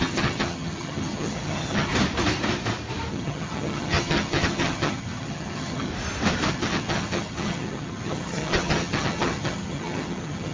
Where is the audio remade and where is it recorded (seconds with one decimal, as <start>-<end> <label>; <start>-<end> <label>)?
0.0-1.9 remade; 1.9-3.1 recorded; 3.1-5.9 remade; 5.9-6.5 recorded; 6.5-10.5 remade